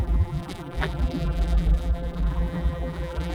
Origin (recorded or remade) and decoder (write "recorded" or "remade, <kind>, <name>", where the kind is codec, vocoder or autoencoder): remade, vocoder, BigVGAN v2